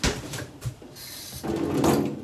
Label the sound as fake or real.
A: real